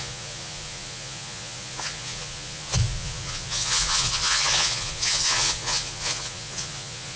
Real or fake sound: fake